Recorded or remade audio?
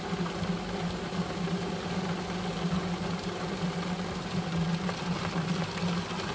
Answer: recorded